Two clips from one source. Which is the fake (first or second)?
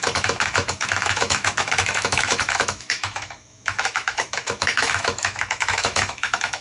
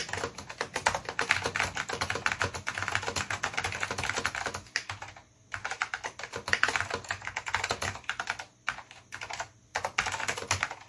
first